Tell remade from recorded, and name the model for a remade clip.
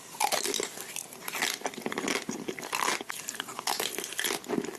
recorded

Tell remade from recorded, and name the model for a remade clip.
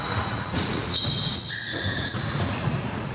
remade, vocoder, Vocos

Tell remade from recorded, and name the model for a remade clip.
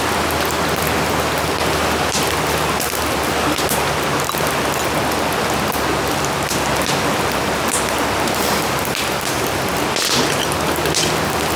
recorded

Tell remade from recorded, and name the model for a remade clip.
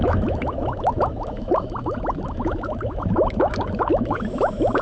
remade, autoencoder, DAC-VAE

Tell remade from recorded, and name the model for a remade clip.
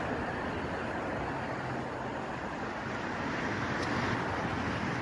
recorded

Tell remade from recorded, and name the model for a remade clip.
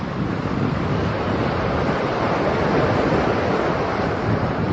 recorded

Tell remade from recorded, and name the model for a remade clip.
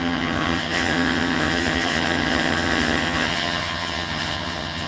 remade, vocoder, HiFi-GAN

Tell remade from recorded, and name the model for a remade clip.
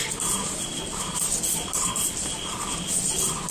recorded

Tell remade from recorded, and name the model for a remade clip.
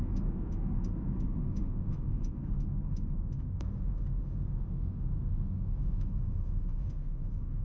remade, autoencoder, DAC-VAE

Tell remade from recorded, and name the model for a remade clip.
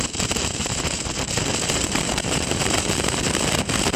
remade, vocoder, BigVGAN v2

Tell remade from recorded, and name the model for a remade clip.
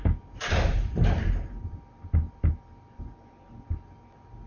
recorded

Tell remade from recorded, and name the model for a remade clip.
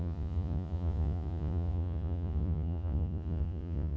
remade, vocoder, Vocos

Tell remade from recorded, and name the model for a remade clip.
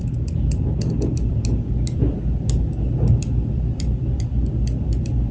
remade, vocoder, BigVGAN v2